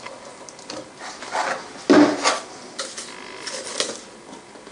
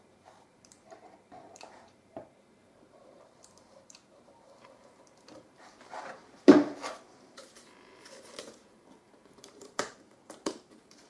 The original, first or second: first